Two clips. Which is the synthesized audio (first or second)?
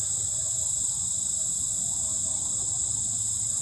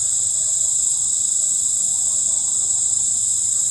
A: second